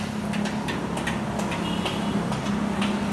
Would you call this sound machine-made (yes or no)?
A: no